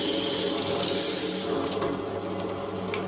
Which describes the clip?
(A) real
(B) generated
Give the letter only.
A